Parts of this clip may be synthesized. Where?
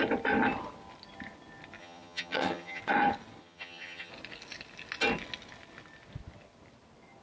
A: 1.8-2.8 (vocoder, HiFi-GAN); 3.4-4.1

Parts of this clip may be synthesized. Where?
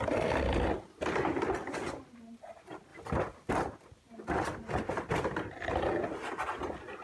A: none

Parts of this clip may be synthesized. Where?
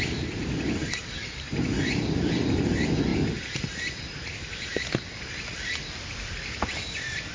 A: none